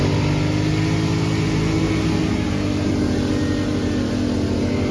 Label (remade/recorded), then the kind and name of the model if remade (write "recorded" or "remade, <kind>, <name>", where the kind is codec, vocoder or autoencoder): recorded